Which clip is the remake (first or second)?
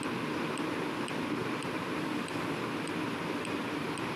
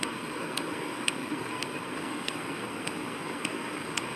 second